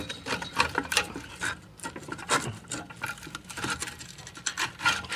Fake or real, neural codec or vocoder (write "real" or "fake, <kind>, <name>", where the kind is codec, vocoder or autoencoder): real